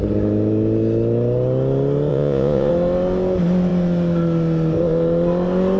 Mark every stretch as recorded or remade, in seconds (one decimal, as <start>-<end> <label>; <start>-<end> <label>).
0.0-2.1 recorded; 2.1-2.7 remade; 2.7-5.8 recorded